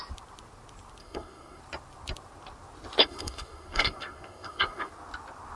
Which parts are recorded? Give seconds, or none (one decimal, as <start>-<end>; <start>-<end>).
0.0-1.0; 1.6-3.0; 4.9-5.6